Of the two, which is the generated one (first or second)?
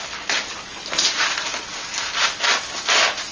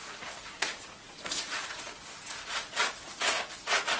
second